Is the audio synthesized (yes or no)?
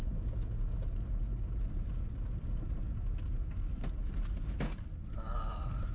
no